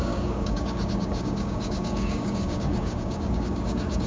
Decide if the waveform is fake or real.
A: fake